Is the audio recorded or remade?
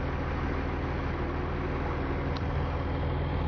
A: recorded